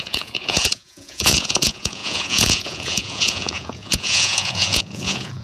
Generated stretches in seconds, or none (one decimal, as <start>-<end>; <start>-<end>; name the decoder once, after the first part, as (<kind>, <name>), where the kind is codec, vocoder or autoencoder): 0.0-5.4 (vocoder, Vocos)